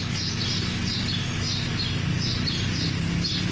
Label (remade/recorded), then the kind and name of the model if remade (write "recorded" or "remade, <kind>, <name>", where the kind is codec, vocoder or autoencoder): recorded